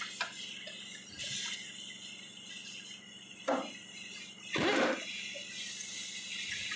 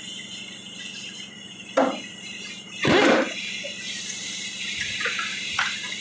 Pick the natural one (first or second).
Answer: first